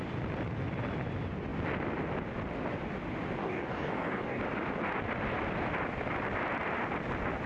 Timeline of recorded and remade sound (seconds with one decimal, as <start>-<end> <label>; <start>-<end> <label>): 0.0-3.4 recorded; 3.4-4.4 remade; 4.4-7.5 recorded